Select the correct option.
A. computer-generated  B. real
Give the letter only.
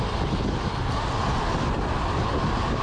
B